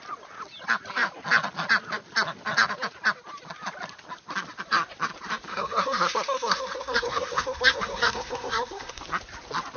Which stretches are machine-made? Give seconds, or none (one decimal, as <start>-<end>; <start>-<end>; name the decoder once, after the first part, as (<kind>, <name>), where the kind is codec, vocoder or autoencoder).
5.5-9.0 (codec, SNAC)